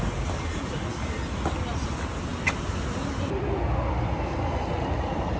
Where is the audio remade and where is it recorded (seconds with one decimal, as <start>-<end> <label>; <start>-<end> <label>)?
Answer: 0.0-5.4 recorded